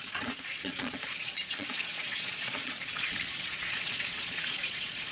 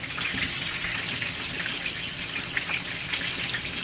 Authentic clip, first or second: second